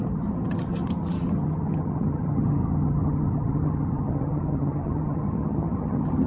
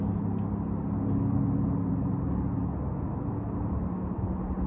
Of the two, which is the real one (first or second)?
second